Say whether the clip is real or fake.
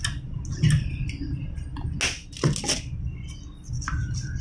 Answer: real